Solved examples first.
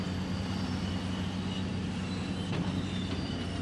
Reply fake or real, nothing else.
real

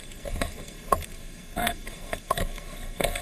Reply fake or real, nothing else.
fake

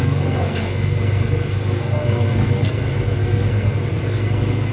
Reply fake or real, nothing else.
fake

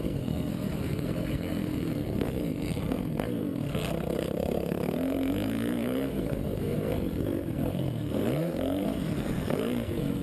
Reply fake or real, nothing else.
fake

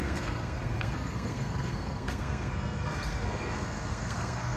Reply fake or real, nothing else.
fake